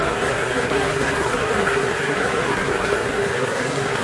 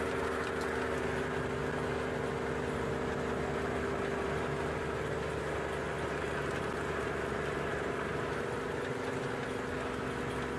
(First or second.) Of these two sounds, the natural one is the second